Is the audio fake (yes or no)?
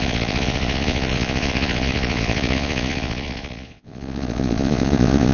yes